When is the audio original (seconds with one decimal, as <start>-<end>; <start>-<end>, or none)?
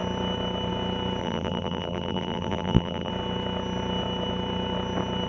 0.0-1.2; 3.1-5.3